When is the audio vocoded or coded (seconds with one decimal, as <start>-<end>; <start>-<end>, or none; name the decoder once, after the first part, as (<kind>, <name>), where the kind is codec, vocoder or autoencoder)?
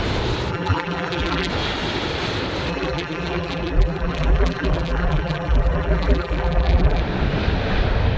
0.5-1.5 (vocoder, BigVGAN v2); 2.7-7.0